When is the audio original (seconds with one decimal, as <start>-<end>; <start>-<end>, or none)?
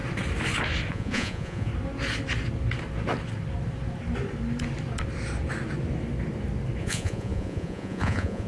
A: 0.0-0.9; 1.7-6.8